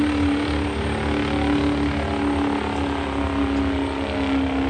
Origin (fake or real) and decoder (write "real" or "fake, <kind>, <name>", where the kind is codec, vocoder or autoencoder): real